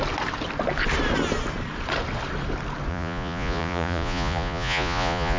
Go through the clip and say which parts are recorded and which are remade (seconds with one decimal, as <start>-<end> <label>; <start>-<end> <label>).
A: 0.0-2.9 recorded; 2.9-5.4 remade